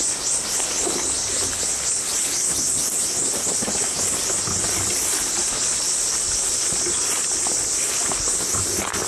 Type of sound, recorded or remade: recorded